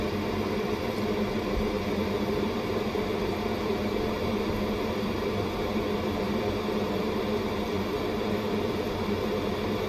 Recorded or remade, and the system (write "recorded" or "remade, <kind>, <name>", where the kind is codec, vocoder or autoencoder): remade, vocoder, BigVGAN v2